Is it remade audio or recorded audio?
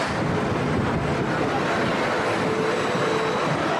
recorded